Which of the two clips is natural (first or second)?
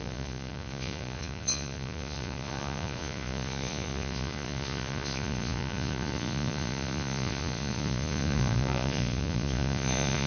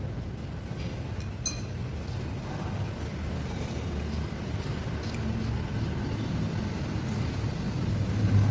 second